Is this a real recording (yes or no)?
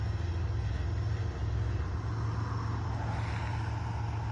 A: yes